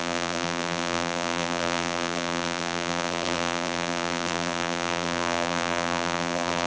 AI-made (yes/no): yes